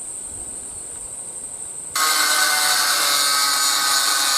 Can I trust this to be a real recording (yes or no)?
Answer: yes